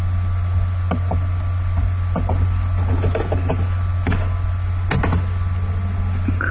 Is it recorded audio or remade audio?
recorded